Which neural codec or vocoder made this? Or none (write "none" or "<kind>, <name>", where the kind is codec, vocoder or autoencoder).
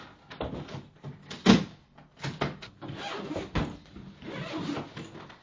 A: none